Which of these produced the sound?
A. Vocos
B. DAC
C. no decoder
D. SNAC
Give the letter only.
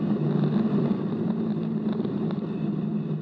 C